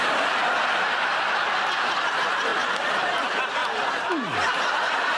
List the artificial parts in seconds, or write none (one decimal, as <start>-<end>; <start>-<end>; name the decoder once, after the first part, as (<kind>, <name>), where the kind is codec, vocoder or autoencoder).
none